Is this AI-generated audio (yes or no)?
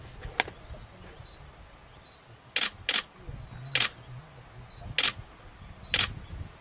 no